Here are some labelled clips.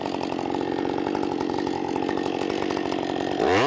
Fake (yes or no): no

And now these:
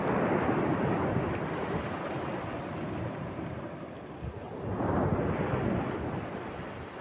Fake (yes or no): no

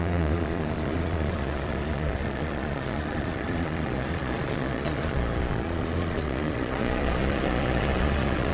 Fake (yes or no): yes